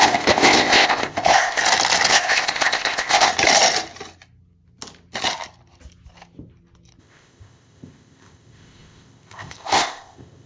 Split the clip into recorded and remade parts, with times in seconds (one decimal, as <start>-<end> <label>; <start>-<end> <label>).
0.0-1.6 remade; 1.6-2.1 recorded; 2.1-3.3 remade; 3.3-7.0 recorded; 7.0-10.5 remade